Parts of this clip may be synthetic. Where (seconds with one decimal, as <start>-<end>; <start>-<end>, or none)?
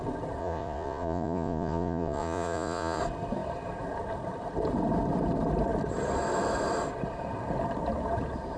0.4-3.0